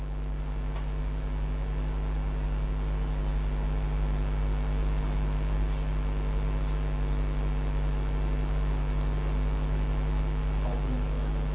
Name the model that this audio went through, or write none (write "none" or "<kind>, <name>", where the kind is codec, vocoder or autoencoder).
none